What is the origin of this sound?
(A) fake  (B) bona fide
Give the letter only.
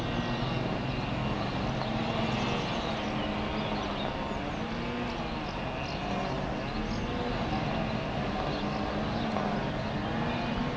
B